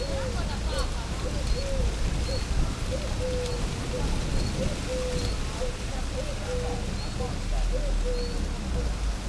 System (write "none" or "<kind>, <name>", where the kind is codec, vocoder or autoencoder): none